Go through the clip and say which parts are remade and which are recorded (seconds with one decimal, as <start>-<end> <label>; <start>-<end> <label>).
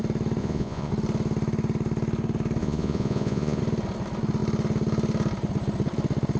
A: 0.0-0.4 recorded; 0.4-0.9 remade; 0.9-2.6 recorded; 2.6-3.6 remade; 3.6-6.4 recorded